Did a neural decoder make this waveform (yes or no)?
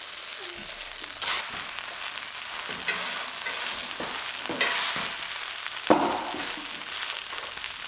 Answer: no